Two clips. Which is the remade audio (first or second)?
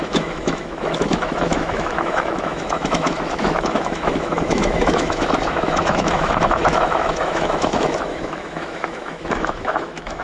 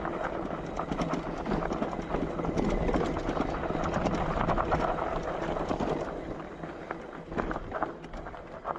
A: first